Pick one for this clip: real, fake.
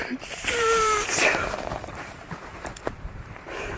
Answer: fake